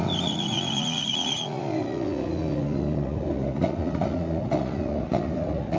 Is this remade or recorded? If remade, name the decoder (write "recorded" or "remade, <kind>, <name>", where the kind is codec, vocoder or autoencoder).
remade, vocoder, Vocos